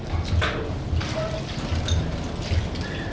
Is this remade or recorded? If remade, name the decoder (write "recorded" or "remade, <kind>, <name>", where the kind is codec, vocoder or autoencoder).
recorded